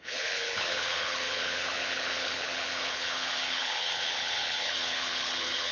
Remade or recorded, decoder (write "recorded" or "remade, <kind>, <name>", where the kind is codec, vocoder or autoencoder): remade, codec, HILCodec